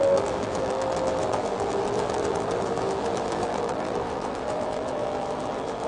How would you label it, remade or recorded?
remade